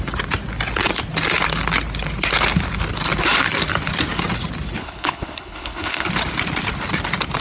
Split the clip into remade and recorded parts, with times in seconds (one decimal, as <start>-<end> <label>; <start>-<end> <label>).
0.0-4.8 recorded; 4.8-6.1 remade; 6.1-7.4 recorded

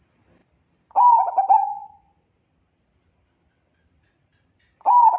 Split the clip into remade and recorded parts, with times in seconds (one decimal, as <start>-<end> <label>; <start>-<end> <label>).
0.0-5.2 recorded

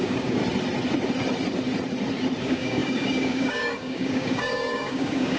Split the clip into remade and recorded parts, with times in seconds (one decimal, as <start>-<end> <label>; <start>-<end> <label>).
0.0-0.4 remade; 0.4-2.4 recorded; 2.4-5.4 remade

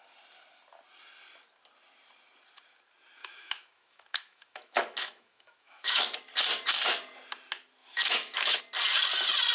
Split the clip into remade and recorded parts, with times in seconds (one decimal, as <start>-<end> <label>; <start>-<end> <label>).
0.0-3.2 recorded; 3.2-6.0 remade; 6.0-7.8 recorded; 7.8-8.6 remade; 8.6-9.5 recorded

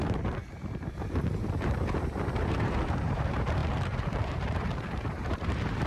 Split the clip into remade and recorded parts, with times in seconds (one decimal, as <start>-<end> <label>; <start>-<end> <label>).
0.0-0.4 remade; 0.4-0.9 recorded; 0.9-5.9 remade

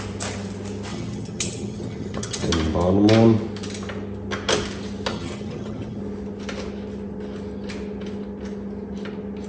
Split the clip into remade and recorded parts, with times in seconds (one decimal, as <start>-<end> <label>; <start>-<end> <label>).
0.0-0.9 recorded; 0.9-2.5 remade; 2.5-5.1 recorded; 5.1-6.0 remade; 6.0-9.5 recorded

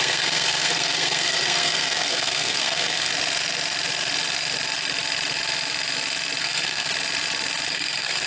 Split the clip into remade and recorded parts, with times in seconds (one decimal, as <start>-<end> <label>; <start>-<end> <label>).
0.0-3.1 remade; 3.1-6.4 recorded; 6.4-6.9 remade; 6.9-7.7 recorded; 7.7-8.3 remade